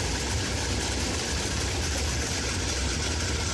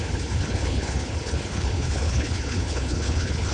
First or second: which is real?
first